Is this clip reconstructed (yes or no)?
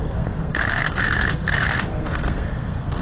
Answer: yes